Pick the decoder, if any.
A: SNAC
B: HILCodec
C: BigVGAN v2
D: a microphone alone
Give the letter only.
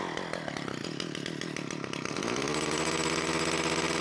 D